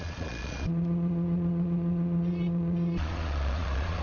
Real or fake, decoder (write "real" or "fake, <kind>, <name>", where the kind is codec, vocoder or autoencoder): fake, vocoder, Vocos